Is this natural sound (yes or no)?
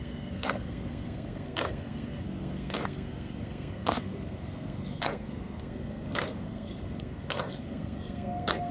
no